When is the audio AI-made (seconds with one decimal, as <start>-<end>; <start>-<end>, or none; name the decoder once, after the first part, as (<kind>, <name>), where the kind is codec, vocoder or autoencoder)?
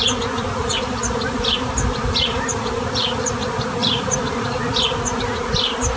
0.6-3.3 (vocoder, BigVGAN v2); 3.8-4.6